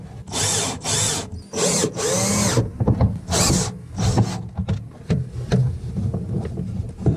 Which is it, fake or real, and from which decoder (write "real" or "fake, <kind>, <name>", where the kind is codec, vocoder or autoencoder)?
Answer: real